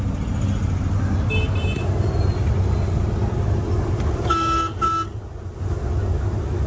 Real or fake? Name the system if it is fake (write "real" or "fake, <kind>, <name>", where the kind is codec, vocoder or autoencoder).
real